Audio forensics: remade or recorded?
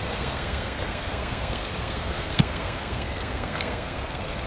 remade